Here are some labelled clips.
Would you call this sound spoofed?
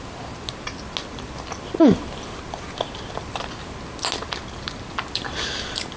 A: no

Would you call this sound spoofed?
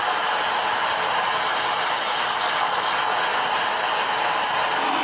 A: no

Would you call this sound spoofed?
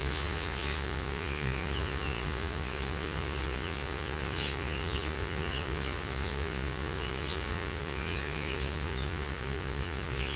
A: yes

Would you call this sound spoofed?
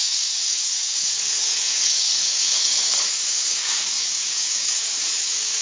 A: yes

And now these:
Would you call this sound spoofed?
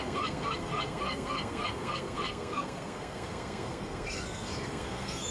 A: yes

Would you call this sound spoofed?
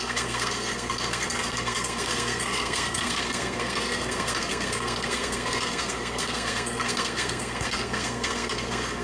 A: yes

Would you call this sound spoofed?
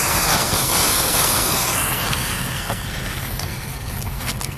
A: yes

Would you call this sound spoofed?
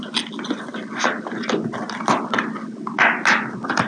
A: no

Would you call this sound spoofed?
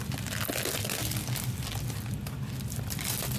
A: no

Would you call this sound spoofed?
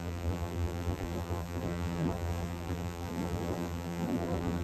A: yes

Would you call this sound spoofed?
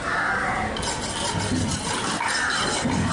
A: no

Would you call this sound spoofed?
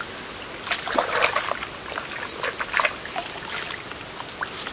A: no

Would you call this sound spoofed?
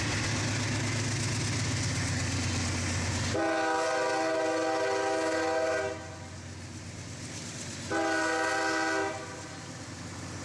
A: no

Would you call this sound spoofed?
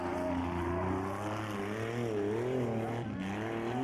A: no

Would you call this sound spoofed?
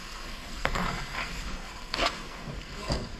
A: yes